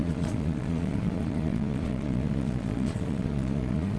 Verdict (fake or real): fake